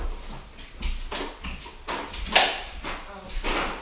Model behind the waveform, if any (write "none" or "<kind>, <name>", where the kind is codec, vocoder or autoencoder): none